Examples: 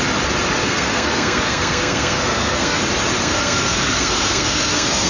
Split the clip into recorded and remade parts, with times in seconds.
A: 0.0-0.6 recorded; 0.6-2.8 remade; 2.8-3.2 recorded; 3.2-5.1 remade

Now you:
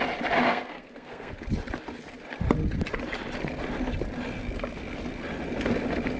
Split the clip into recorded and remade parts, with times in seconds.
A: 0.0-0.5 recorded; 0.5-1.3 remade; 1.3-6.2 recorded

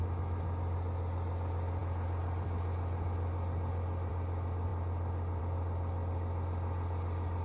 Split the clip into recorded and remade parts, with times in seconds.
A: 0.0-7.4 recorded

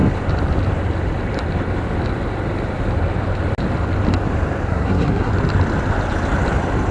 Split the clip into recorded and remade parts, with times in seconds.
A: 0.0-4.7 recorded; 4.7-5.3 remade; 5.3-6.9 recorded

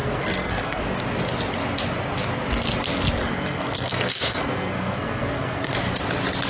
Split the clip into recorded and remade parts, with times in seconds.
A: 0.0-0.8 remade; 0.8-3.2 recorded; 3.2-5.9 remade; 5.9-6.5 recorded

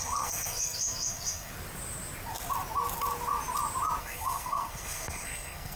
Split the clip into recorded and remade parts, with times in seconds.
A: 0.0-1.5 remade; 1.5-4.0 recorded; 4.0-5.8 remade